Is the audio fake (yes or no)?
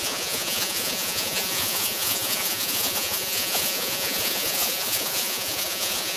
yes